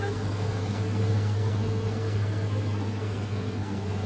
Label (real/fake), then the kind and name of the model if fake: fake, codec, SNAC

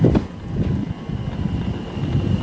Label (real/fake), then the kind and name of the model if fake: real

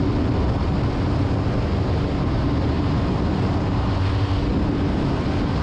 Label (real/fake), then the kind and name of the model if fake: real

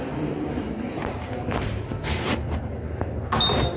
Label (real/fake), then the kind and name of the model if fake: real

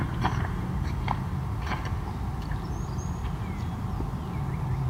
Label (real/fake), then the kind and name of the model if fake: real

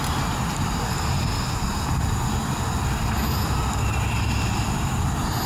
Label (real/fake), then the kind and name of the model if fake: real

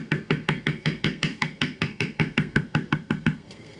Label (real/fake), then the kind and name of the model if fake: fake, codec, SNAC